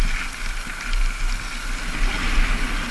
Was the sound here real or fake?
real